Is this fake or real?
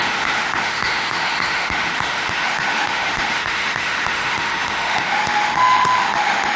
fake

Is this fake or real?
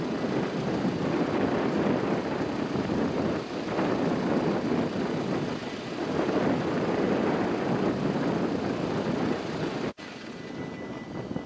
real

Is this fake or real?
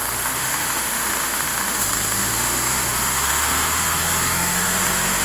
fake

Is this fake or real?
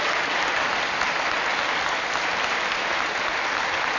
real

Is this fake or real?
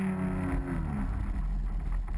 real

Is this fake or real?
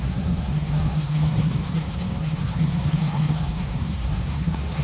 fake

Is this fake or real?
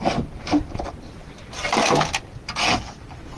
real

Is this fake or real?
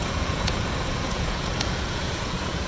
fake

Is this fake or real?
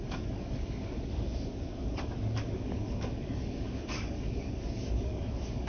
fake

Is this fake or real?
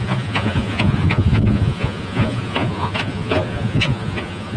fake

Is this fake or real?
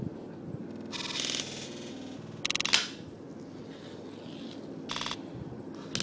real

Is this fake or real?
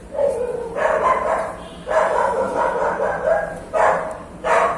fake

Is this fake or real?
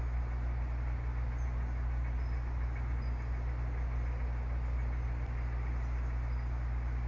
real